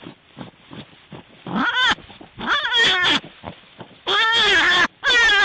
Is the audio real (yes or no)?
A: yes